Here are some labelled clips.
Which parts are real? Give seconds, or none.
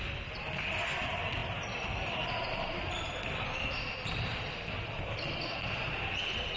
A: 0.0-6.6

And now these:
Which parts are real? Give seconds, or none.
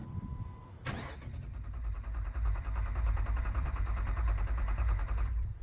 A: 3.8-5.1